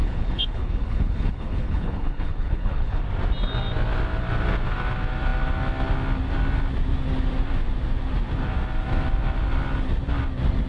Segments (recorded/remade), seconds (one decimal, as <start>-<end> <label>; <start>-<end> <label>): 0.0-3.0 remade; 3.0-10.7 recorded